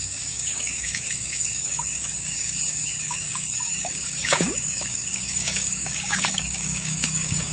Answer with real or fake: fake